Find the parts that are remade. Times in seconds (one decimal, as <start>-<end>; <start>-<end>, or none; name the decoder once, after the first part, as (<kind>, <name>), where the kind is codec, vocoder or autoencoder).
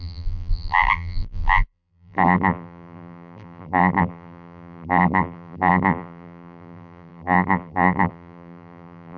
0.0-9.2 (vocoder, BigVGAN v2)